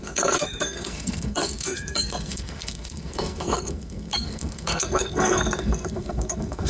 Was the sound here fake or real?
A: fake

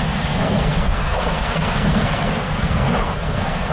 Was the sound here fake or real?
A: fake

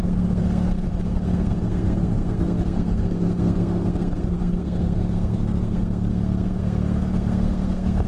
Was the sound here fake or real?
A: fake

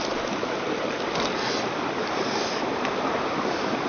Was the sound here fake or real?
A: real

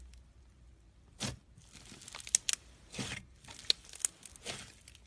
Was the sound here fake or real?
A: real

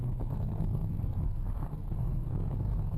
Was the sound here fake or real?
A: fake